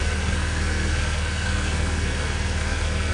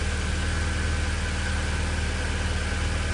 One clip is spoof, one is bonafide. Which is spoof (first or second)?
first